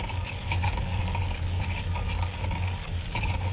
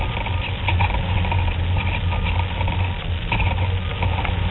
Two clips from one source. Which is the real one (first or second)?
second